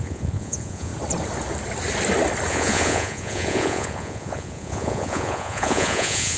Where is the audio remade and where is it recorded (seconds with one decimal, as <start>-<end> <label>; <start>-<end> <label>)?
0.0-0.9 remade; 0.9-2.5 recorded; 2.5-6.4 remade